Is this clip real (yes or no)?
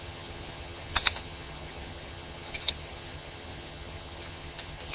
no